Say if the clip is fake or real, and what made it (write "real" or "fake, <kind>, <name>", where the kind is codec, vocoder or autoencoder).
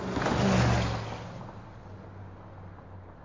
real